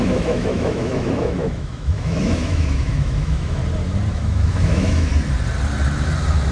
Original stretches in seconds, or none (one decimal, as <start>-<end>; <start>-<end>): 3.6-4.1; 5.1-6.5

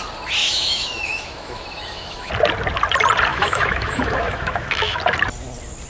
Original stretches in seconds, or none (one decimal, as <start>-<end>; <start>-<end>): 0.0-0.4; 2.3-3.3; 5.0-5.9

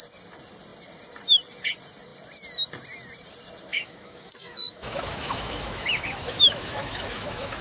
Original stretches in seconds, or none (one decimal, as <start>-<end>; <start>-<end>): 0.0-3.7

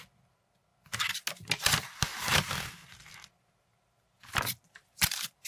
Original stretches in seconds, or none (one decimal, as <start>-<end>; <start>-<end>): 0.0-2.1